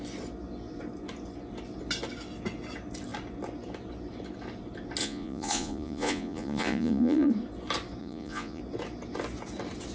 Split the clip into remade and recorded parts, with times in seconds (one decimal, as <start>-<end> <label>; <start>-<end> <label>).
0.0-5.0 recorded; 5.0-7.3 remade; 7.3-8.0 recorded; 8.0-8.6 remade; 8.6-9.9 recorded